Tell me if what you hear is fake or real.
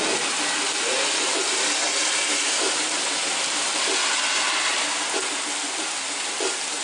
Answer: real